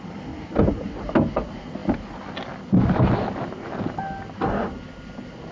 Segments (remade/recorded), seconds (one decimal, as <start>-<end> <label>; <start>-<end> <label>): 0.0-5.5 recorded